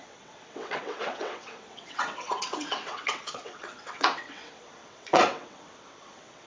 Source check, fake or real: fake